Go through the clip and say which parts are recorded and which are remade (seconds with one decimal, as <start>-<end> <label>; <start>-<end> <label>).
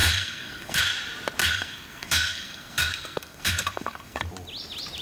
0.0-0.8 remade; 0.8-1.4 recorded; 1.4-4.2 remade; 4.2-5.0 recorded